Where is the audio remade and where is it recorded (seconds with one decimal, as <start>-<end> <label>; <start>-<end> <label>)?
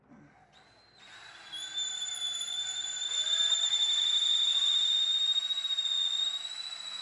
0.0-7.0 recorded